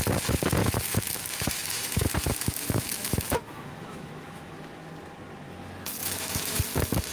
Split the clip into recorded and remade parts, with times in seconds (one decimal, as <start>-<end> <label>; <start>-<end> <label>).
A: 0.0-0.6 recorded; 0.6-4.9 remade; 4.9-6.0 recorded; 6.0-6.6 remade; 6.6-7.1 recorded